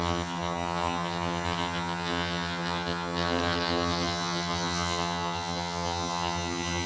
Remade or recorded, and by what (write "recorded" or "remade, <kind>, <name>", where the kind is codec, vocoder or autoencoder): remade, vocoder, HiFi-GAN